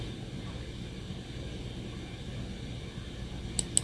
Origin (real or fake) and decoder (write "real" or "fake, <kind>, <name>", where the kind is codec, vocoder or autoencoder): real